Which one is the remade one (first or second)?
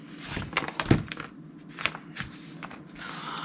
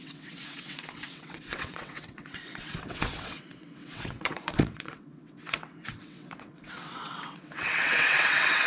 second